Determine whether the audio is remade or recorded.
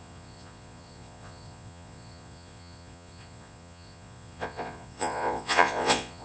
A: remade